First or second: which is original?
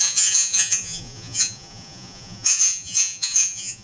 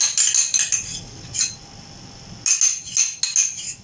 second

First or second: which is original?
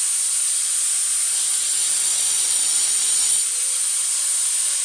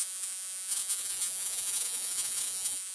first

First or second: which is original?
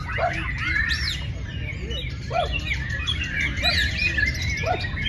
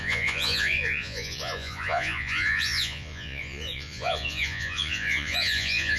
first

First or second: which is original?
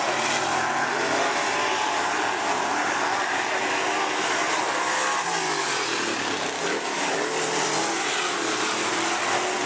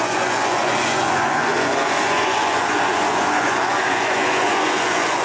first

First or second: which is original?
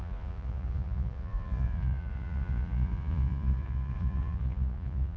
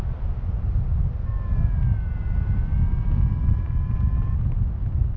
second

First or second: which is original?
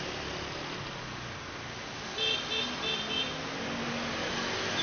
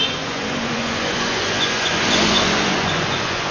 first